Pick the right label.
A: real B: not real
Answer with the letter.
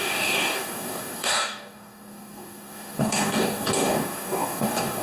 B